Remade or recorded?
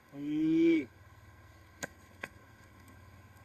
remade